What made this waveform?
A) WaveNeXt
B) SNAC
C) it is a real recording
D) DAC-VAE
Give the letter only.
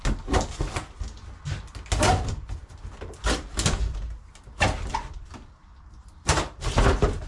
C